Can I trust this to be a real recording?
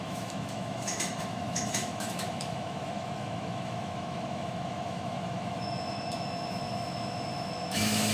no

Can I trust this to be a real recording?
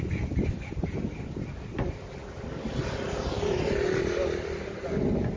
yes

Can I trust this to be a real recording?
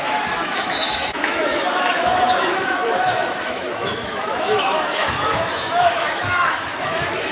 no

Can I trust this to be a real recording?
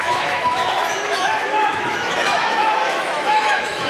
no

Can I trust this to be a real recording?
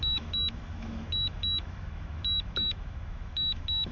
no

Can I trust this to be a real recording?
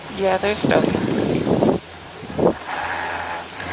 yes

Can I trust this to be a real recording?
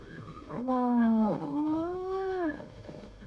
no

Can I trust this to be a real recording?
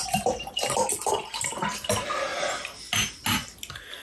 yes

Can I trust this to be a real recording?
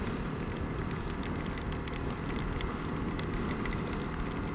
yes